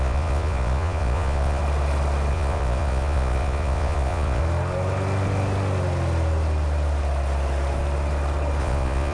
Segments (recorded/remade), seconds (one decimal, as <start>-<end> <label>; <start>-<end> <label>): 0.0-1.6 remade; 1.6-2.3 recorded; 2.3-4.4 remade; 4.4-8.6 recorded; 8.6-9.1 remade